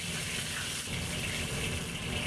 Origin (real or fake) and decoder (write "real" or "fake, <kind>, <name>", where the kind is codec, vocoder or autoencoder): real